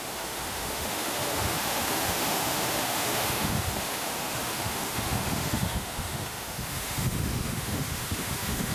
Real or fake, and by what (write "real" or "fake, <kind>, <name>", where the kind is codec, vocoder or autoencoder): fake, autoencoder, DAC-VAE